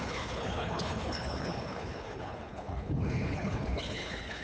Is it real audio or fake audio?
fake